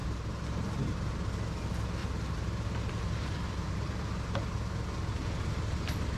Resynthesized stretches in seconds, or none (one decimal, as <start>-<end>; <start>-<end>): 0.0-0.6; 2.0-4.1